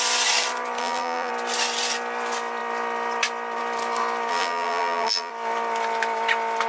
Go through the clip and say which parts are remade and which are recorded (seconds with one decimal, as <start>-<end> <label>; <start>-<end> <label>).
0.0-0.8 recorded; 0.8-1.3 remade; 1.3-4.3 recorded; 4.3-5.3 remade; 5.3-6.7 recorded